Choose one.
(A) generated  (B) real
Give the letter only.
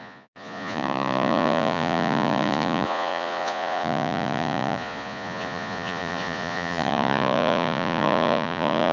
A